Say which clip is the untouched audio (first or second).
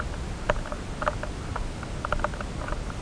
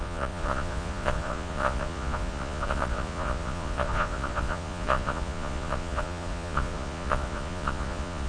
first